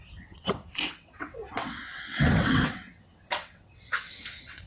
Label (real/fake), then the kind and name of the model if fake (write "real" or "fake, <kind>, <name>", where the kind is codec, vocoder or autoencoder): fake, vocoder, WaveNeXt